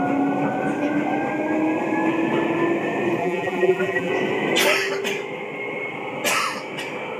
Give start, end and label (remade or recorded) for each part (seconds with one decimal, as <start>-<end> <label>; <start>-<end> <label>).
0.0-3.2 recorded; 3.2-4.1 remade; 4.1-7.2 recorded